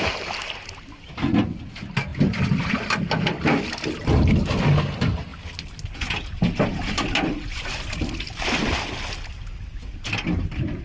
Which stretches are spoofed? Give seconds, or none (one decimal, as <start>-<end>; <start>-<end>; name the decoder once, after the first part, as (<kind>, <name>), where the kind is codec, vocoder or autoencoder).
none